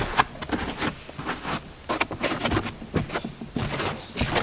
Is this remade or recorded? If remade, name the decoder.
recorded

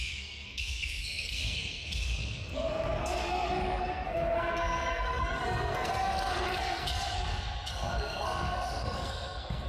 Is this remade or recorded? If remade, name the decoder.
remade, codec, SNAC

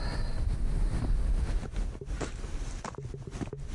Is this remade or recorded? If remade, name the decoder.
recorded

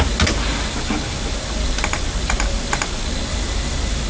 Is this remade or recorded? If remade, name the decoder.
recorded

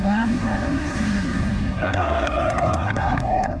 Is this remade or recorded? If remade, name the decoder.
remade, codec, SNAC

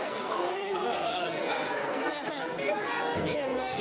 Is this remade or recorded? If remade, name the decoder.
remade, codec, SNAC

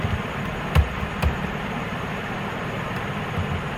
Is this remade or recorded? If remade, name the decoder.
recorded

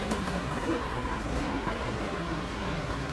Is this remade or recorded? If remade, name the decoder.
remade, codec, SNAC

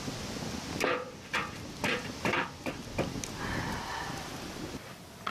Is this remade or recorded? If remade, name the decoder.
recorded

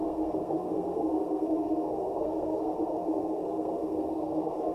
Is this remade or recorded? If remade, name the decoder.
remade, codec, SNAC